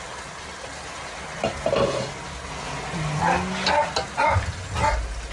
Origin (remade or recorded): recorded